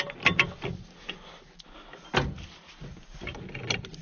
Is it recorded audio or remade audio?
recorded